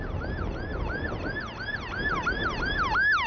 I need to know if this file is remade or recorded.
recorded